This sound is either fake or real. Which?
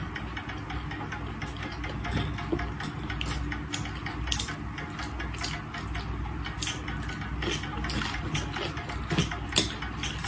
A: real